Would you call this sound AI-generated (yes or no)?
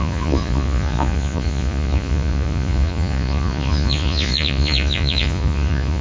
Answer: yes